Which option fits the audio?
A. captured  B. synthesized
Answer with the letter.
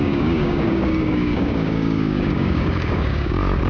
B